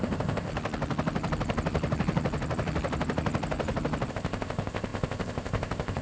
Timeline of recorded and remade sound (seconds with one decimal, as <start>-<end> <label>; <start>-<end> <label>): 0.0-0.5 remade; 0.5-4.1 recorded; 4.1-6.0 remade